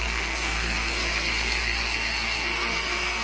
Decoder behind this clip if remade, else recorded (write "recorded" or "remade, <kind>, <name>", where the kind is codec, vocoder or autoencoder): remade, codec, SNAC